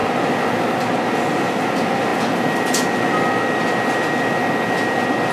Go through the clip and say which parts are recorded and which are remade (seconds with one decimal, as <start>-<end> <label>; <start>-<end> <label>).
0.0-5.3 recorded